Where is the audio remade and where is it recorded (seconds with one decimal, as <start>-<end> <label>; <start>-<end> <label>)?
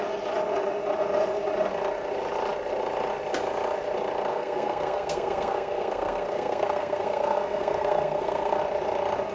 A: 0.0-4.3 recorded; 4.3-8.6 remade; 8.6-9.3 recorded